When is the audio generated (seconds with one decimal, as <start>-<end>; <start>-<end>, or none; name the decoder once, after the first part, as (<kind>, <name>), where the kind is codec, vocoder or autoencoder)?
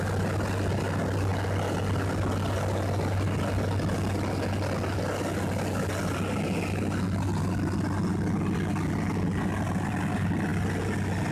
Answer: none